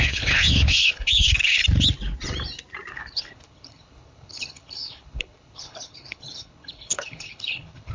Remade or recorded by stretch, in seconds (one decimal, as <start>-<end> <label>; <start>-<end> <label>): 0.0-1.6 remade; 1.6-2.9 recorded; 2.9-7.9 remade